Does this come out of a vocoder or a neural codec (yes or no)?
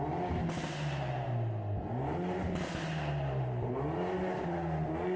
no